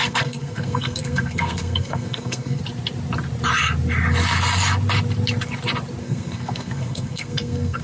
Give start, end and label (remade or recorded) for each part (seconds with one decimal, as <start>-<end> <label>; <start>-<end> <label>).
0.0-2.6 remade; 2.6-6.0 recorded; 6.0-7.8 remade